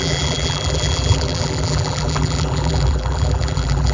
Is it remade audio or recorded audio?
remade